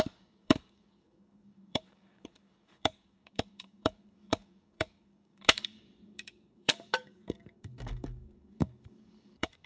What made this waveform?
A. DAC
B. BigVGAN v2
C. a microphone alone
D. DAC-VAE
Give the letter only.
A